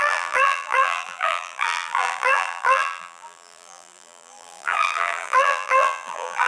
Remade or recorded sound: remade